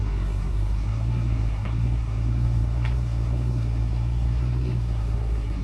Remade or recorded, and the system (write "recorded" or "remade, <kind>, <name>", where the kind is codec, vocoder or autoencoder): remade, codec, SNAC